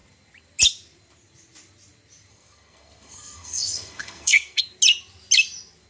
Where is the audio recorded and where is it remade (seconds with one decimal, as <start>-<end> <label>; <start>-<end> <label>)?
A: 0.0-2.3 recorded; 2.3-4.6 remade; 4.6-5.9 recorded